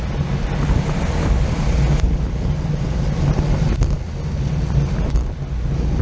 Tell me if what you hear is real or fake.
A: real